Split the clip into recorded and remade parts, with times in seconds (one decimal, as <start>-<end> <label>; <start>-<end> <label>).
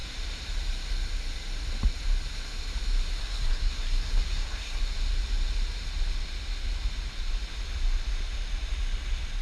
0.0-3.2 recorded; 3.2-4.8 remade; 4.8-9.4 recorded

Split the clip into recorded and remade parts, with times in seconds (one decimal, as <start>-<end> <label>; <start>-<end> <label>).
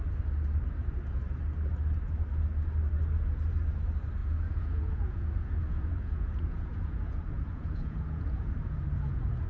0.0-4.2 recorded; 4.2-9.5 remade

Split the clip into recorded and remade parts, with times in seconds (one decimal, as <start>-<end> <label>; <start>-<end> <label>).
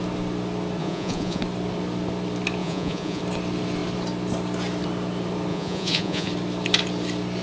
0.0-0.8 recorded; 0.8-1.4 remade; 1.4-2.6 recorded; 2.6-3.2 remade; 3.2-5.5 recorded; 5.5-6.3 remade; 6.3-7.4 recorded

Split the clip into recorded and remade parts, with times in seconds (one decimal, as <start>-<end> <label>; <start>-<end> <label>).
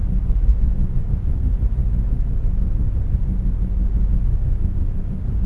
0.0-0.5 remade; 0.5-1.0 recorded; 1.0-1.8 remade; 1.8-5.1 recorded; 5.1-5.5 remade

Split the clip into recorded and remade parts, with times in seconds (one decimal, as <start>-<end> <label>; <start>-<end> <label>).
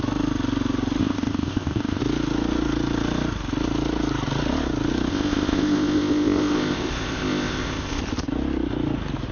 0.0-1.0 recorded; 1.0-2.0 remade; 2.0-5.1 recorded; 5.1-8.0 remade; 8.0-9.3 recorded